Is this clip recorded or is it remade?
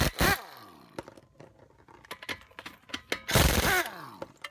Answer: recorded